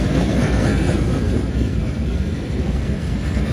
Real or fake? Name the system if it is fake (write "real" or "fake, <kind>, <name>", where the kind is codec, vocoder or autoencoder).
fake, codec, SNAC